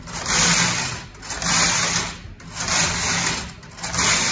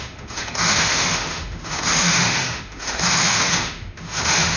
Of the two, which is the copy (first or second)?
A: second